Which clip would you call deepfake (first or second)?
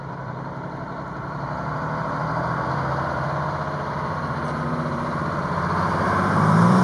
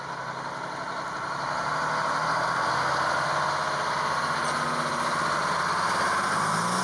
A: first